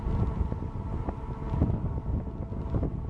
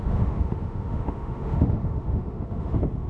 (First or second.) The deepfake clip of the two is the second